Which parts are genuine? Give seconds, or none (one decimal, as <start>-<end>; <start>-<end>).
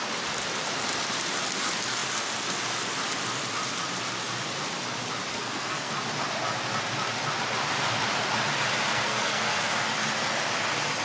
0.0-5.3; 5.9-8.9; 9.6-11.0